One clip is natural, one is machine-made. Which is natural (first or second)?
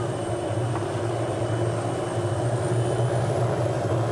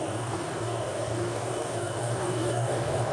first